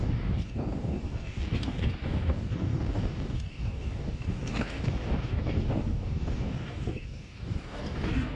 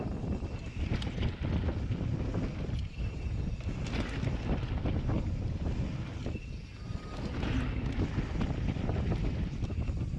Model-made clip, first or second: first